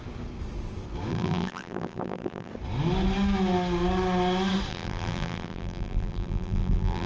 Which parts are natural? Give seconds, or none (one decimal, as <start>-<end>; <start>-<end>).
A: 0.0-1.1; 2.5-4.7